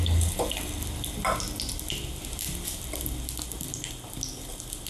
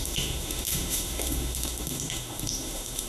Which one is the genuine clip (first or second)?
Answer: first